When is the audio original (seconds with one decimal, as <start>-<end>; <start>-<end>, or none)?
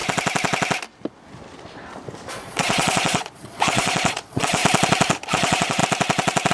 0.0-2.3; 4.6-5.3; 5.8-6.5